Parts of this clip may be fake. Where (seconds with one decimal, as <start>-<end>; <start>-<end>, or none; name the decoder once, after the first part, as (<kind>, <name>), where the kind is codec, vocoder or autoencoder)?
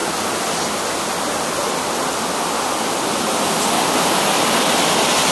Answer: none